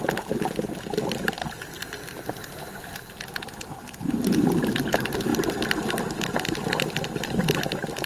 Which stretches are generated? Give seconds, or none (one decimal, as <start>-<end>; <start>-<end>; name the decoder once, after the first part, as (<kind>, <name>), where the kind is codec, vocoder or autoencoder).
0.0-5.3 (vocoder, BigVGAN v2); 6.8-8.1